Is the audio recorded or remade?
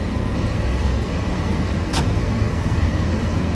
remade